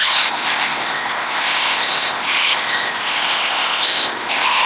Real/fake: fake